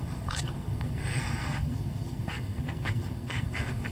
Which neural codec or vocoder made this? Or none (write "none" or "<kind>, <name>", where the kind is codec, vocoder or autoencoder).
codec, SNAC